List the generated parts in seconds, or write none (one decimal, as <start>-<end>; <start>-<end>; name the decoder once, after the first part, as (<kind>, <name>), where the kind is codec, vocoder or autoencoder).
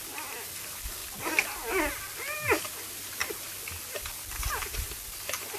none